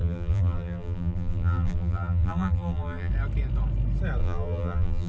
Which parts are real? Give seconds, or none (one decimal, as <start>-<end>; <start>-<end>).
3.1-4.2